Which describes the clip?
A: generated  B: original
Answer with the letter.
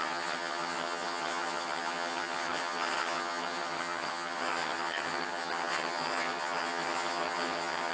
A